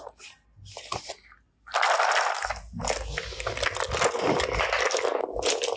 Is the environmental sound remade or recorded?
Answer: recorded